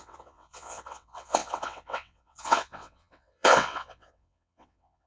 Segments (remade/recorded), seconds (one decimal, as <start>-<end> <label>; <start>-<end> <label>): 0.0-5.1 remade